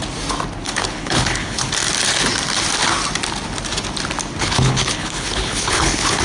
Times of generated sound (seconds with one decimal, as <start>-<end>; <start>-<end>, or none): 0.6-1.7; 4.4-6.2